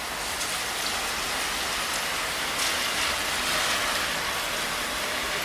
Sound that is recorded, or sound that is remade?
recorded